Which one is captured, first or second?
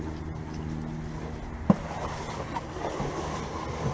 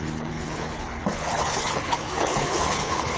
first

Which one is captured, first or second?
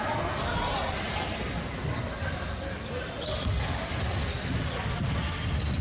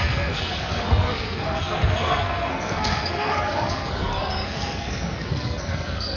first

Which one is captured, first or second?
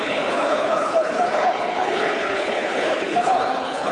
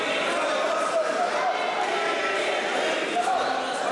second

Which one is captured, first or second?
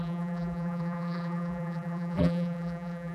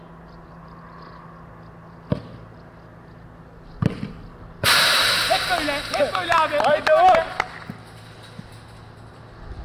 second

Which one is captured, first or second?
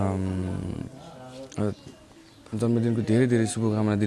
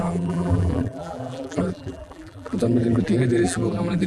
first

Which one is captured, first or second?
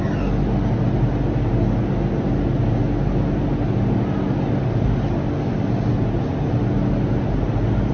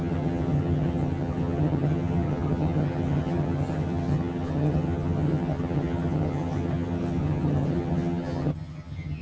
first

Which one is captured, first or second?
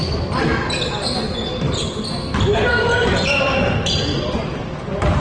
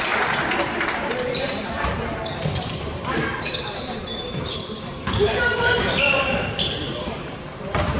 first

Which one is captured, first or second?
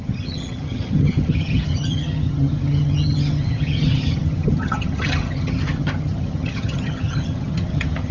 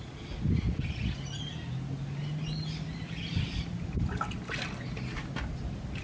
second